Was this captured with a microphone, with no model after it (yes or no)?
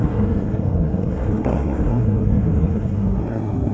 no